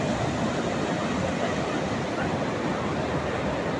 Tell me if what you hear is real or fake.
real